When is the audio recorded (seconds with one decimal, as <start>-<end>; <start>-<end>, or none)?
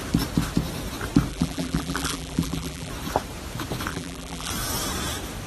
0.0-1.3; 2.9-3.9; 4.5-5.5